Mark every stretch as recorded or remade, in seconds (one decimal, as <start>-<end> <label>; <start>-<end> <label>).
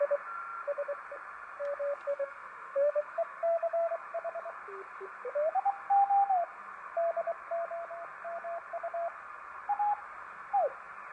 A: 0.0-2.1 recorded; 2.1-3.9 remade; 3.9-11.1 recorded